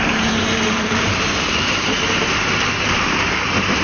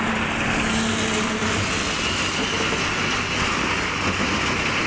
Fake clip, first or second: first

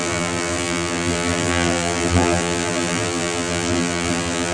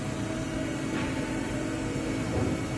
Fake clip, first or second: first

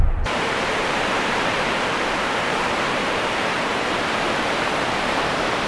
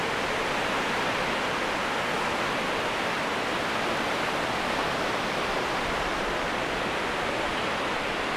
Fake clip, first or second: first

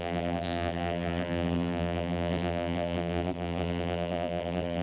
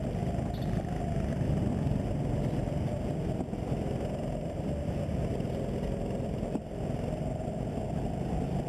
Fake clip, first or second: first